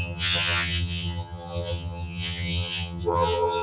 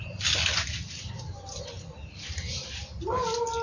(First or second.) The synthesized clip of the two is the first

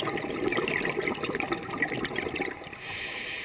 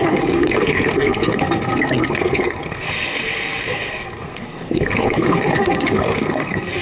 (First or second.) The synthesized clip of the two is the second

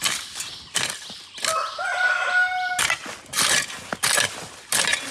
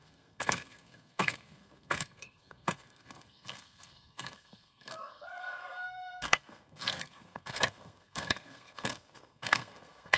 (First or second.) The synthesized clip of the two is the second